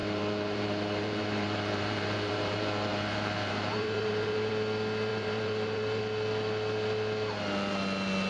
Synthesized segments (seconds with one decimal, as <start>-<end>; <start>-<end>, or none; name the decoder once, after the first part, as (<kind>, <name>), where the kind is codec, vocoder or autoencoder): 0.0-4.5 (vocoder, BigVGAN v2); 5.1-6.0